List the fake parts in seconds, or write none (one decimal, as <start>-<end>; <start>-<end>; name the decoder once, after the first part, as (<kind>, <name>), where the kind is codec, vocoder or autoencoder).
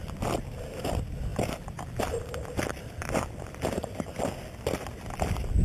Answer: none